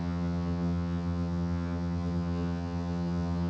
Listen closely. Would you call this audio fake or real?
fake